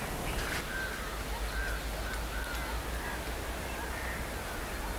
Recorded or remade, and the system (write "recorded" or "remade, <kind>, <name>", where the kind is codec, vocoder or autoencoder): recorded